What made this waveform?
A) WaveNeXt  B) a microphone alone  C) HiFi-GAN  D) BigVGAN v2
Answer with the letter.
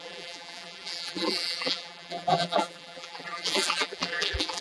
D